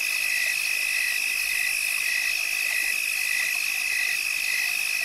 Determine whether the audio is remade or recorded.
recorded